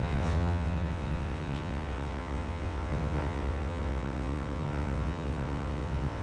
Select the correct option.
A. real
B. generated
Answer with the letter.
B